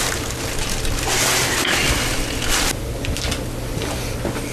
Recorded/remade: recorded